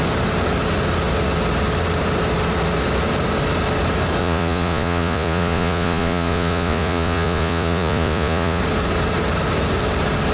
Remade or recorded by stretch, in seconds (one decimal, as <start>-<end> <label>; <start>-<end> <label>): 0.0-4.2 recorded; 4.2-8.6 remade; 8.6-10.3 recorded